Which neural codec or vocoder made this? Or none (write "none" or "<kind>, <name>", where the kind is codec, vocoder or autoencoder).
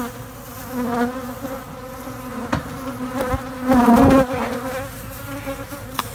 none